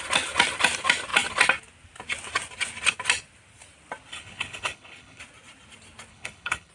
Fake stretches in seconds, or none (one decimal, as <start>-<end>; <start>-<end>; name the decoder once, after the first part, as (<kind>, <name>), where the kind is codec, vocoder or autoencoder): 4.1-5.2 (codec, HILCodec); 6.1-6.7